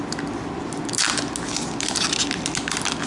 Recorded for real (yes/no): yes